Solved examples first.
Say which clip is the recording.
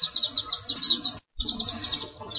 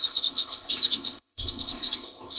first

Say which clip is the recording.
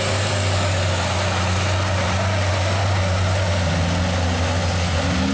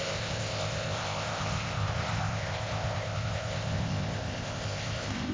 first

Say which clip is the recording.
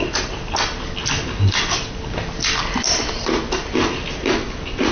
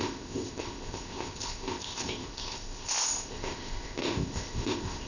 first